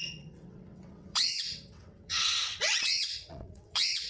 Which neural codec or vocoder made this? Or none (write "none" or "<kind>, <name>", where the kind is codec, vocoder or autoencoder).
vocoder, WaveNeXt